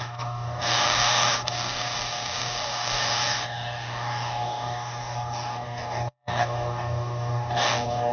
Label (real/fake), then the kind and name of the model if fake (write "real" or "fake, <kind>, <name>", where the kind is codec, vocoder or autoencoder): fake, codec, DAC